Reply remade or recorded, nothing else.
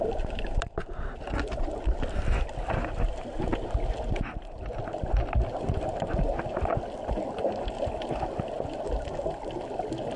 recorded